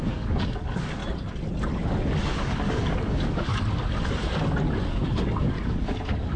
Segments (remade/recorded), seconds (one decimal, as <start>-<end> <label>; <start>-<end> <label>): 0.0-1.0 remade; 1.0-2.3 recorded; 2.3-3.5 remade; 3.5-4.9 recorded; 4.9-6.4 remade

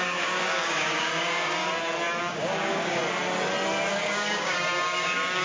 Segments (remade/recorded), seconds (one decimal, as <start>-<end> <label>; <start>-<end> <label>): 0.0-1.6 remade; 1.6-2.2 recorded; 2.2-3.0 remade; 3.0-3.9 recorded; 3.9-5.4 remade

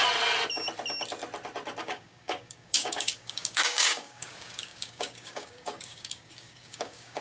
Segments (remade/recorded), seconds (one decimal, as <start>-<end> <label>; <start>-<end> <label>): 0.0-1.8 recorded; 1.8-7.2 remade

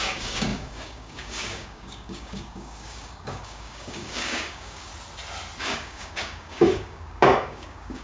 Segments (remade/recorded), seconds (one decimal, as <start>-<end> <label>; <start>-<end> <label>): 0.0-4.9 remade; 4.9-5.6 recorded; 5.6-8.0 remade

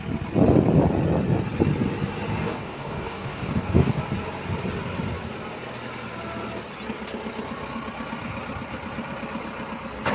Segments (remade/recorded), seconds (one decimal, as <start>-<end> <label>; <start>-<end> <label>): 0.0-2.4 recorded; 2.4-4.0 remade; 4.0-10.1 recorded